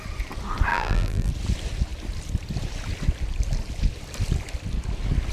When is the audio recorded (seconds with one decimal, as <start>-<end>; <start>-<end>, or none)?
0.0-0.7; 1.3-5.3